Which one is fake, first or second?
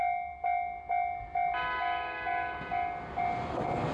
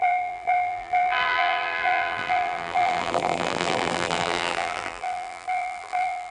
second